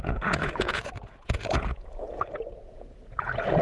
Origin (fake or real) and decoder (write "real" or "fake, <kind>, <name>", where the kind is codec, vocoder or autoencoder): fake, vocoder, Vocos